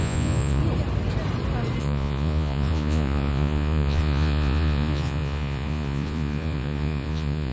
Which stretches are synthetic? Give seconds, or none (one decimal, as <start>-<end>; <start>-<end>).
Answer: 0.0-0.6; 1.8-7.5